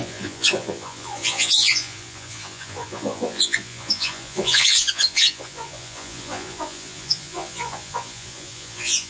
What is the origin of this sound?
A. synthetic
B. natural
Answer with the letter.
A